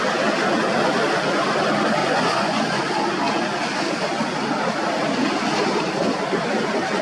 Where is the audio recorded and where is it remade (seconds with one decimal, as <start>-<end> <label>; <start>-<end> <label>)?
0.0-2.0 recorded; 2.0-2.8 remade; 2.8-7.0 recorded